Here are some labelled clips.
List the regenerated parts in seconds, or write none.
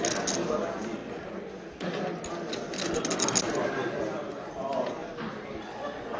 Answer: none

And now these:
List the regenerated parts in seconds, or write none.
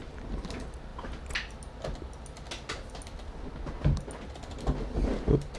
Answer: none